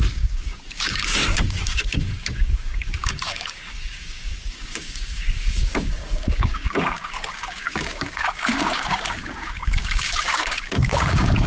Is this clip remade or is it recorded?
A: remade